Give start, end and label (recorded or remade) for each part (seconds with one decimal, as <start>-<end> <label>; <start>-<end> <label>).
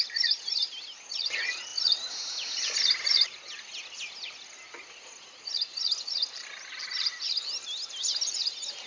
0.0-8.9 recorded